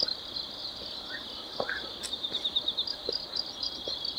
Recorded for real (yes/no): yes